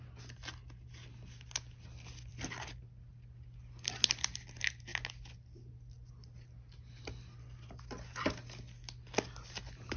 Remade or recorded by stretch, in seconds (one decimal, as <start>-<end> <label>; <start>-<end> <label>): 0.0-10.0 recorded